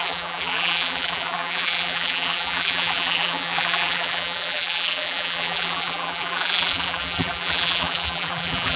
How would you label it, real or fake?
fake